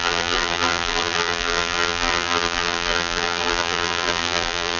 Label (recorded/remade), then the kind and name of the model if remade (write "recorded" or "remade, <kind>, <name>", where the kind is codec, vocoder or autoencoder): remade, vocoder, BigVGAN v2